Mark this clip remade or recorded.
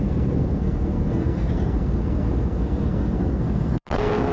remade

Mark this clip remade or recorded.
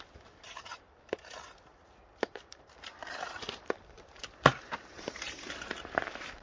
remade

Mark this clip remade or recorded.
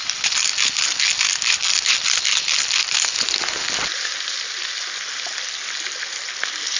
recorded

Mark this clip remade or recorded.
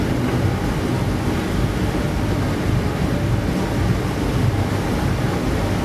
recorded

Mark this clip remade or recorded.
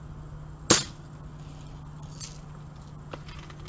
recorded